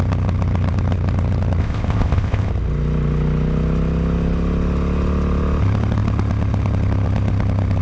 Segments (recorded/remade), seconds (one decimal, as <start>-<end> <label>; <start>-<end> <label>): 0.0-1.6 recorded; 1.6-2.5 remade; 2.5-7.8 recorded